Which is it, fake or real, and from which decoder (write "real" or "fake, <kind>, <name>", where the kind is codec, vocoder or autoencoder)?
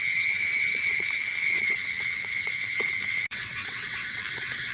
fake, vocoder, WaveNeXt